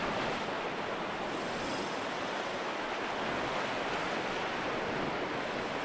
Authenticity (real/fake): real